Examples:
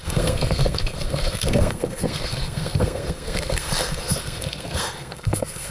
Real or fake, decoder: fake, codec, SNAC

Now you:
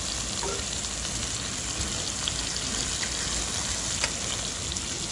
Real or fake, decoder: real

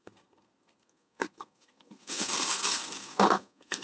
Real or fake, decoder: fake, codec, SNAC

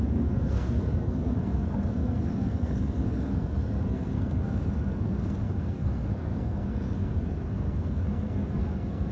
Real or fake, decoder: fake, codec, SNAC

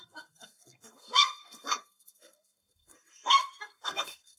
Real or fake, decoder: fake, codec, SNAC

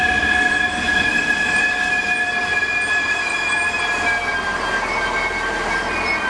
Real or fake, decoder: real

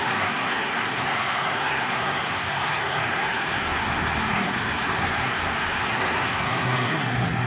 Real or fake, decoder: fake, codec, SNAC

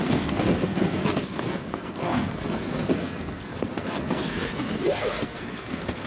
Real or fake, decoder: fake, codec, SNAC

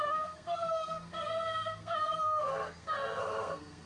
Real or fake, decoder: fake, codec, SNAC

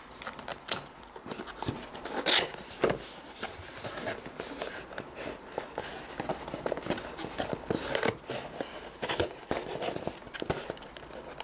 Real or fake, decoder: real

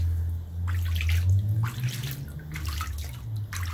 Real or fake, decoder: real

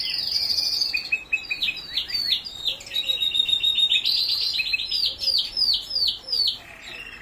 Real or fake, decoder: real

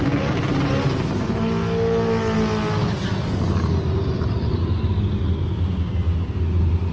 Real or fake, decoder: real